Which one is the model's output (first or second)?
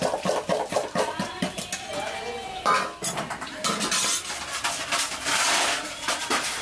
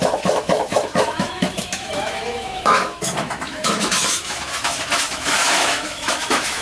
second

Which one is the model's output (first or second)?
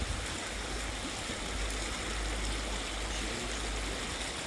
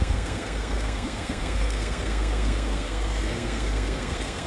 second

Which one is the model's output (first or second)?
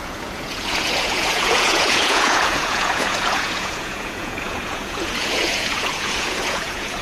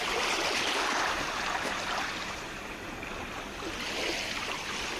first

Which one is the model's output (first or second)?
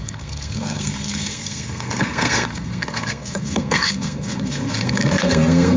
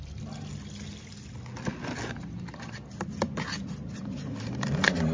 first